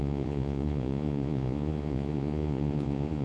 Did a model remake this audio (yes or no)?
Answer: yes